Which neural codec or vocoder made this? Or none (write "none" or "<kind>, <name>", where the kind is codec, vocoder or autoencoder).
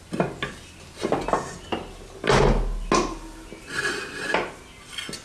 none